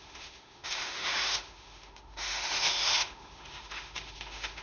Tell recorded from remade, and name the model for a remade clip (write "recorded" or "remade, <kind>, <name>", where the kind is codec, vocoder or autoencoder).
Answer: remade, autoencoder, DAC-VAE